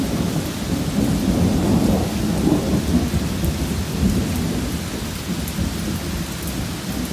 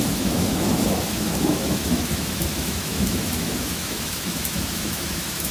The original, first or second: first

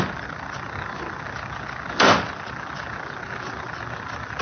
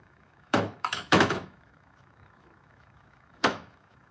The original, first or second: first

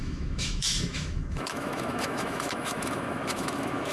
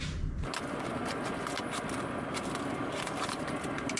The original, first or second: second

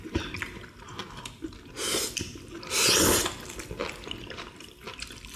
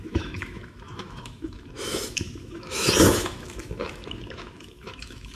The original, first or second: first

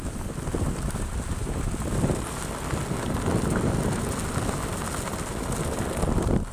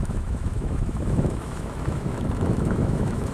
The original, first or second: first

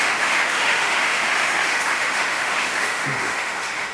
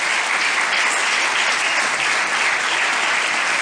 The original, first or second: second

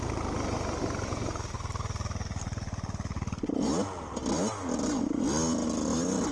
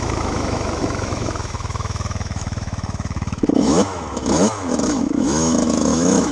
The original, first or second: first